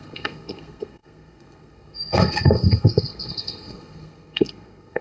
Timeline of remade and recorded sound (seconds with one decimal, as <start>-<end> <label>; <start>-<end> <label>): 0.0-5.0 remade